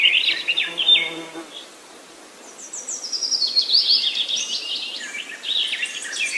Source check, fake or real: real